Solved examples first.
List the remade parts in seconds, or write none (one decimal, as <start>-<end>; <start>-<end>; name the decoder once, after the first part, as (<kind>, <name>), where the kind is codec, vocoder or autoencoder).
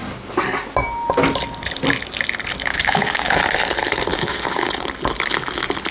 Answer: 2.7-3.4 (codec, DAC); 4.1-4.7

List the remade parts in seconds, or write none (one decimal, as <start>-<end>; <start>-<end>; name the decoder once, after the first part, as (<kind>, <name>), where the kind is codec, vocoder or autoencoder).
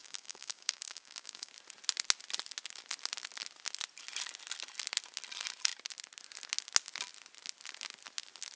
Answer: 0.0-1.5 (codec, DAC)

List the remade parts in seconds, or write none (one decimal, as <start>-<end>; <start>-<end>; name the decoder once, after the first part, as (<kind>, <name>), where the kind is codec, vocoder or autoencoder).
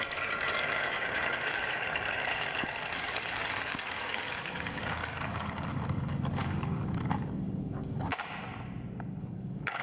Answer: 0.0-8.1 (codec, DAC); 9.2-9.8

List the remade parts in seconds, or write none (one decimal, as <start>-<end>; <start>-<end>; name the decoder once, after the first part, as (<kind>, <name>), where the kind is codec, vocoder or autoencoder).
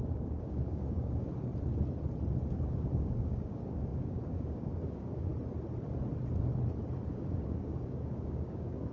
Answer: 0.0-1.5 (codec, DAC); 2.5-5.3; 7.1-8.9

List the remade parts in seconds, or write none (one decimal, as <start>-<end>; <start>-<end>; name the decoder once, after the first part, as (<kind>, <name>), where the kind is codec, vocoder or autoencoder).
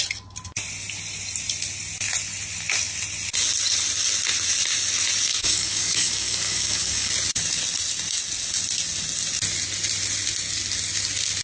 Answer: 5.3-7.1 (codec, DAC)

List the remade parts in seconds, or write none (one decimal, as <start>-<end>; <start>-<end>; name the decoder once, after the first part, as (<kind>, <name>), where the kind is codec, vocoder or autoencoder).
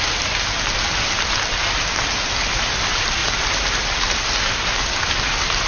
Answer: none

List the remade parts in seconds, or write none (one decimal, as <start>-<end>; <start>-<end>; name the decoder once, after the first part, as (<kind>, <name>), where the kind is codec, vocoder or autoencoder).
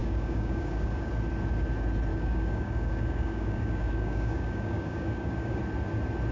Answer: 0.0-1.1 (codec, DAC); 2.1-5.6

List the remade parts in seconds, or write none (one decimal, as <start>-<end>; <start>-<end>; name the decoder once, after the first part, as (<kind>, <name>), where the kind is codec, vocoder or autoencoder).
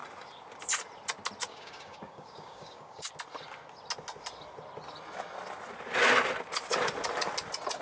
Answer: 1.5-3.1 (codec, DAC)